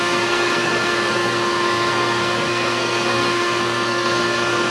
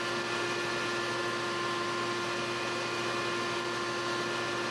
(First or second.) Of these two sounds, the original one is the second